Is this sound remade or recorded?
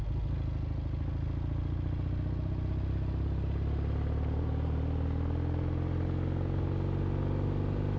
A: recorded